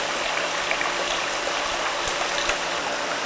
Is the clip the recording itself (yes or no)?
yes